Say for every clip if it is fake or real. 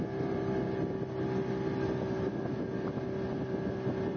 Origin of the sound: real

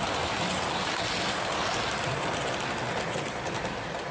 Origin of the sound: real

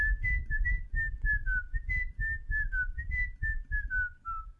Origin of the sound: real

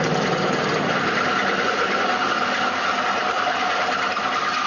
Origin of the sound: real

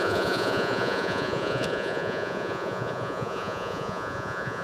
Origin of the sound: fake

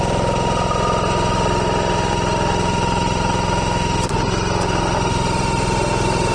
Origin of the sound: real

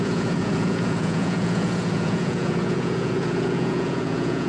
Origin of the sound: fake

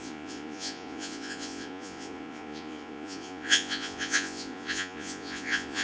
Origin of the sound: fake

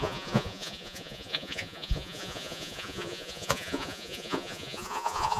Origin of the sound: fake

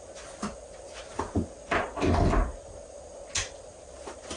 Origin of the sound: real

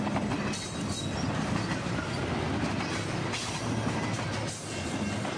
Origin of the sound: real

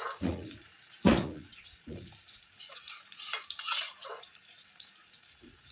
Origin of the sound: fake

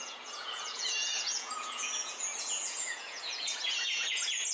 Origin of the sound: fake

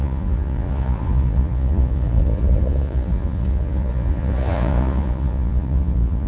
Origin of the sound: fake